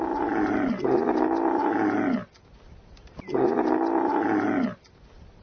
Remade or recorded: recorded